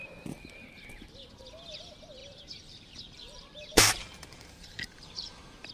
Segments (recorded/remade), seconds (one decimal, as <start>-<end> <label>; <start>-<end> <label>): 0.0-2.2 recorded; 2.2-5.7 remade